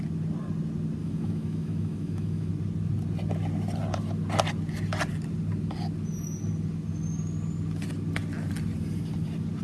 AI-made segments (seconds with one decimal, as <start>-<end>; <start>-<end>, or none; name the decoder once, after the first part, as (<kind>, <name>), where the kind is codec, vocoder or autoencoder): 1.0-2.5 (autoencoder, DAC-VAE)